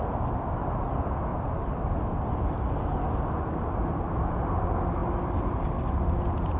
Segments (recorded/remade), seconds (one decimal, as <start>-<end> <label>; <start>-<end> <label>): 0.0-1.3 recorded; 1.3-2.3 remade; 2.3-5.0 recorded; 5.0-5.6 remade; 5.6-6.6 recorded